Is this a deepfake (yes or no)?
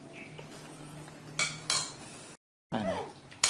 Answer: no